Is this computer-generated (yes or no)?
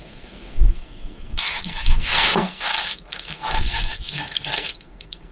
yes